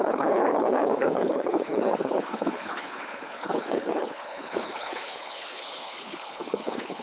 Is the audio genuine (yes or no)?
no